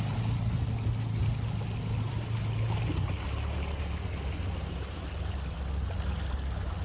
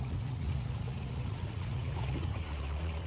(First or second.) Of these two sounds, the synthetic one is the second